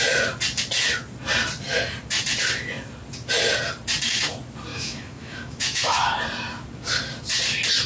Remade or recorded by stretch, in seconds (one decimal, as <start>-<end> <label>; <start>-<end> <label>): 0.0-4.7 recorded; 4.7-6.2 remade; 6.2-7.9 recorded

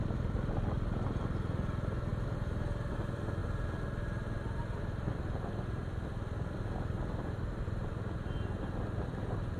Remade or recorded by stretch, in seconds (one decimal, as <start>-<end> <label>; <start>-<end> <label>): 0.0-9.6 recorded